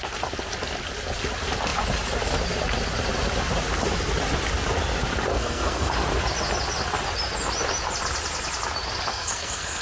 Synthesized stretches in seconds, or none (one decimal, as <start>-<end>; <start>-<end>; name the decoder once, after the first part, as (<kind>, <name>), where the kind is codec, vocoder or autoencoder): 5.3-5.9 (codec, SNAC); 9.1-9.8